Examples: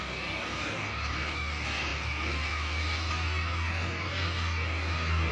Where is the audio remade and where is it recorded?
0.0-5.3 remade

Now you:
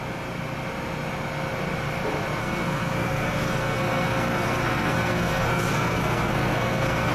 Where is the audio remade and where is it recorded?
0.0-2.4 recorded; 2.4-7.1 remade

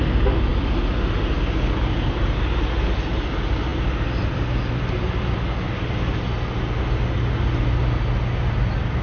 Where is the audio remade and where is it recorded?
0.0-9.0 recorded

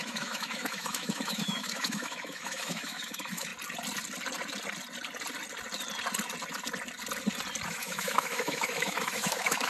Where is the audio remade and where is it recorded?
0.0-3.5 remade; 3.5-7.7 recorded; 7.7-9.7 remade

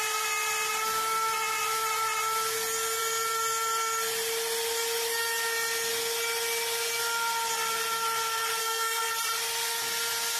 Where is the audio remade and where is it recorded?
0.0-8.6 recorded; 8.6-9.1 remade; 9.1-10.4 recorded

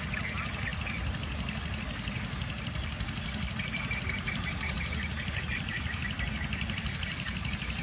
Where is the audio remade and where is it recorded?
0.0-7.8 recorded

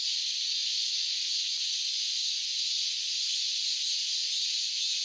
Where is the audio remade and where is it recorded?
0.0-0.6 recorded; 0.6-3.5 remade; 3.5-5.0 recorded